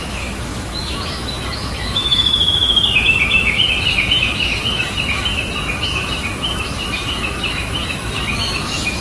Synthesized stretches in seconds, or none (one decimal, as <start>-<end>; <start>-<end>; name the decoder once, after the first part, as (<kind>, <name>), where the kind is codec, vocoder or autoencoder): 0.0-9.0 (autoencoder, DAC-VAE)